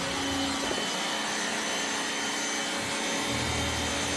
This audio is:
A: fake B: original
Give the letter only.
B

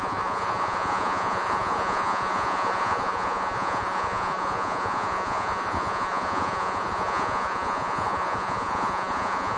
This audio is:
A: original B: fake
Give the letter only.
B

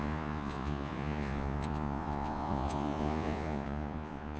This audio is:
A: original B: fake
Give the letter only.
B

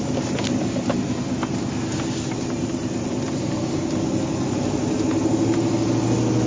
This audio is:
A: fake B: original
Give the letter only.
B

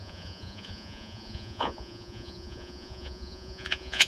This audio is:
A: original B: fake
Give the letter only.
B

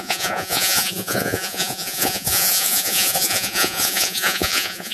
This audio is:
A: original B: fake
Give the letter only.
B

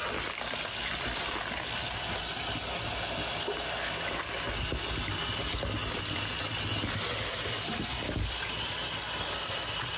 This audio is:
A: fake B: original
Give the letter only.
B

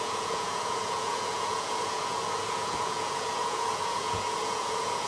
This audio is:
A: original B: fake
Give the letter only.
B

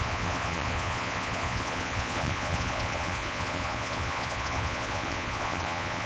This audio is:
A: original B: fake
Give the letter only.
B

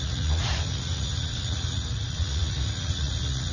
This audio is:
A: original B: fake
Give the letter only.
B